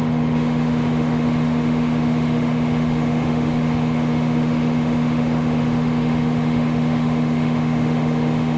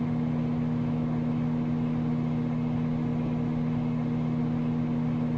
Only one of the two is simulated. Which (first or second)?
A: first